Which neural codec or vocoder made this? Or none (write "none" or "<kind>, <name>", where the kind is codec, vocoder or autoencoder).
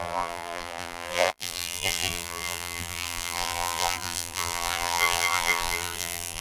vocoder, BigVGAN v2